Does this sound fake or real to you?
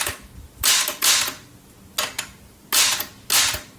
real